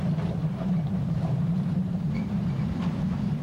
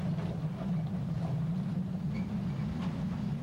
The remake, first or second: first